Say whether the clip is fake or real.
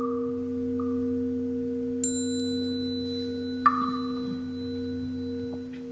real